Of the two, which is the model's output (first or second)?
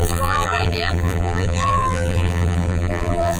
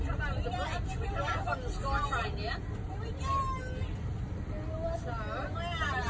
first